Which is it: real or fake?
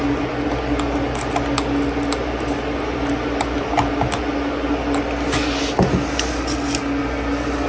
real